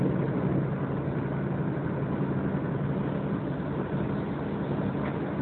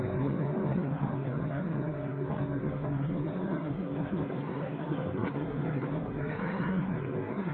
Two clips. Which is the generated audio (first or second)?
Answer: second